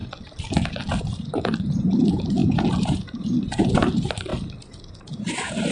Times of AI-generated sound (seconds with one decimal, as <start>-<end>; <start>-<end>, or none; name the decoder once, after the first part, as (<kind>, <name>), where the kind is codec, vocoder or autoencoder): 1.0-5.7 (vocoder, BigVGAN v2)